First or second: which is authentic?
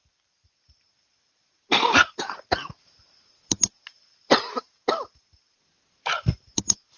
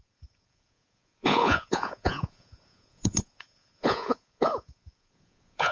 first